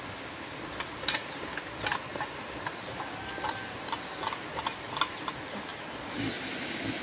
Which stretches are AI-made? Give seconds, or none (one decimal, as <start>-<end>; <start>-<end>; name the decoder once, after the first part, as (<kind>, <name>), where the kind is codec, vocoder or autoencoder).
none